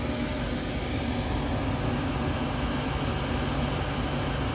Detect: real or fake real